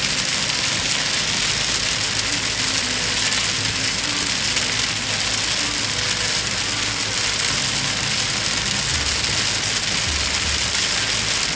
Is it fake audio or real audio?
real